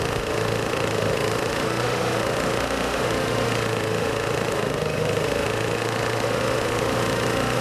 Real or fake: fake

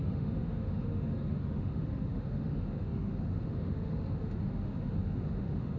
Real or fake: fake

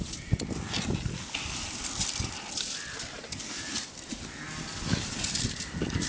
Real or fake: real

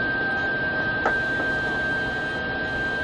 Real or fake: real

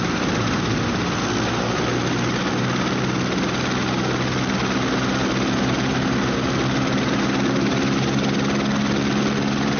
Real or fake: real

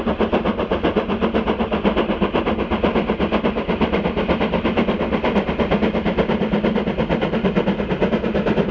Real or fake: real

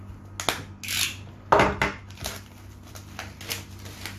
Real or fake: real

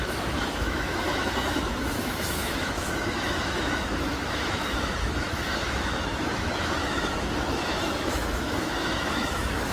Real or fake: fake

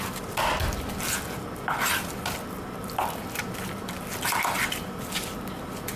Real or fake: real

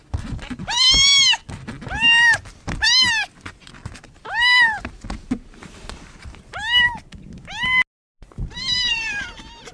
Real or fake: real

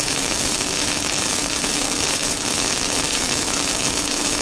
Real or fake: fake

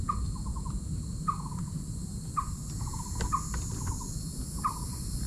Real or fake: real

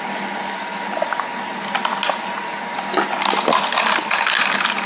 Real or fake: real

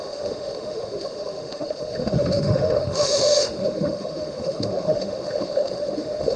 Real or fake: fake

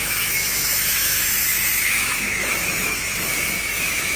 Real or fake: fake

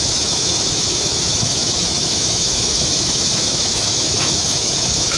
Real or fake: fake